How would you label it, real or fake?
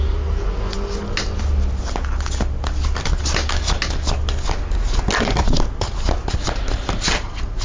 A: real